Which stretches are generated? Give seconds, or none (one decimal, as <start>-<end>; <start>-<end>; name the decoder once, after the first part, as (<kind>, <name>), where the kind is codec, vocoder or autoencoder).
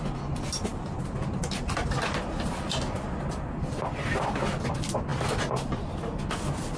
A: none